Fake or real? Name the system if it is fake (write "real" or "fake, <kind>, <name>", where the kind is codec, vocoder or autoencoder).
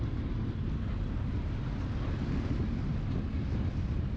real